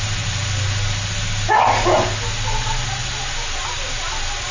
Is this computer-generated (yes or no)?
no